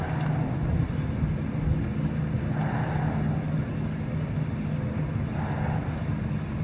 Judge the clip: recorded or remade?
recorded